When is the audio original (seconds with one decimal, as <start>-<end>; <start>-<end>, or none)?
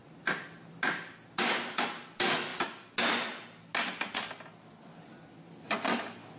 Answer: 0.0-6.4